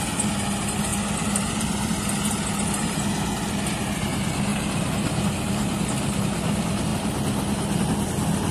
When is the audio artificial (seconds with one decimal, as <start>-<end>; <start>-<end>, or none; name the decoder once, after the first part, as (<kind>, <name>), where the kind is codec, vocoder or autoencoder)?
4.5-6.2 (vocoder, BigVGAN v2)